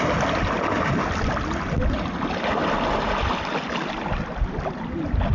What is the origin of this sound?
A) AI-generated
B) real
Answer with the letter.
B